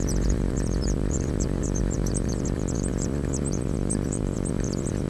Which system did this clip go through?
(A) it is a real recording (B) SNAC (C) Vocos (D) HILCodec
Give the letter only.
C